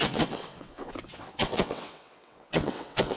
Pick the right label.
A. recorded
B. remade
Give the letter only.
B